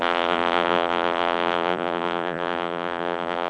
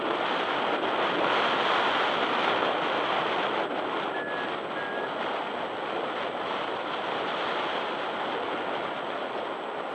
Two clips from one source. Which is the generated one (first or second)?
first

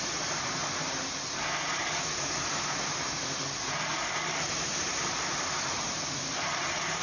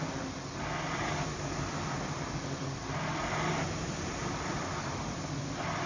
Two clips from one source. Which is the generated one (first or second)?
first